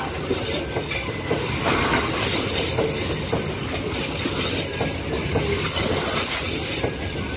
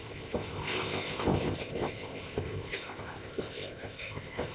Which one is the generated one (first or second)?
second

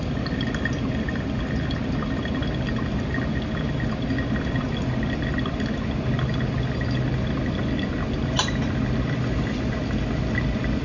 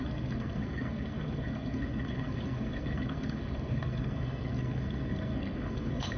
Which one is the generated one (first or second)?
second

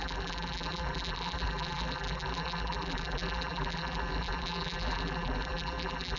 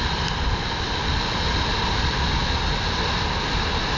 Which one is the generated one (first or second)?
first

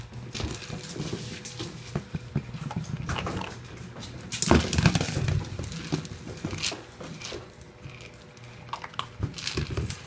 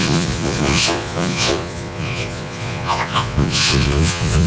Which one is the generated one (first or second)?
second